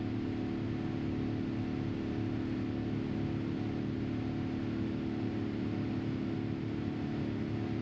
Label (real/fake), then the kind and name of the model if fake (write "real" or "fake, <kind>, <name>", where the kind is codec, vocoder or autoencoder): real